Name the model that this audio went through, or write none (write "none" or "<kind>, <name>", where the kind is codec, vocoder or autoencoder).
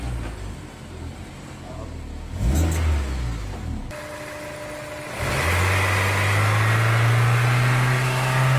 none